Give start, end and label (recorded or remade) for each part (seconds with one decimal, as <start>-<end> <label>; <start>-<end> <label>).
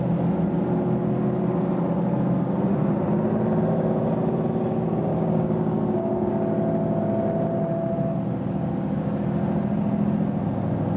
0.0-5.1 recorded; 5.1-6.3 remade; 6.3-11.0 recorded